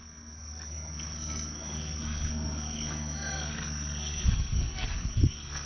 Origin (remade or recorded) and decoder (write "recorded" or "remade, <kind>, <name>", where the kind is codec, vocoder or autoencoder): remade, codec, SNAC